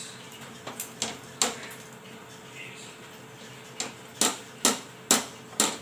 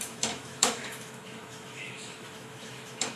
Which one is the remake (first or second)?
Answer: second